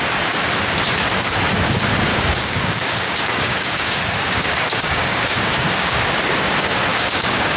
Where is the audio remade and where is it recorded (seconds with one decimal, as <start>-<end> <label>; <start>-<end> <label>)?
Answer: 0.0-2.1 recorded; 2.1-6.1 remade; 6.1-6.9 recorded; 6.9-7.6 remade

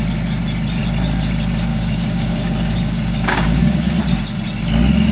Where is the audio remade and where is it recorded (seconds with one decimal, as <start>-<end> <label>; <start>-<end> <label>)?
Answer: 0.0-1.7 recorded; 1.7-4.0 remade; 4.0-5.1 recorded